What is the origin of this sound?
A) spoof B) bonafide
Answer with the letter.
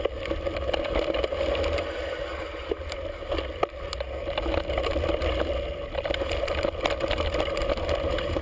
B